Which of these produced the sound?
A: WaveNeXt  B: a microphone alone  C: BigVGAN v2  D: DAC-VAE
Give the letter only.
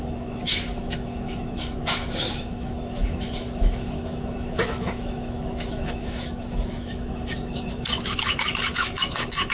D